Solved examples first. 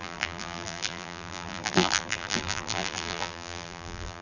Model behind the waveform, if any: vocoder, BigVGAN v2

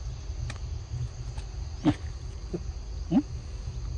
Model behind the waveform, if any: none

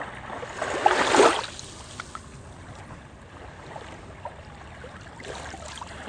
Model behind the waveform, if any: none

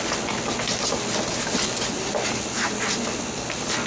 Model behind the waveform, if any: none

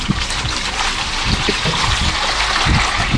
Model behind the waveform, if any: none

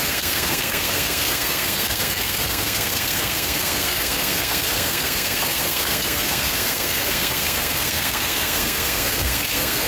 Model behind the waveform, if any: codec, SNAC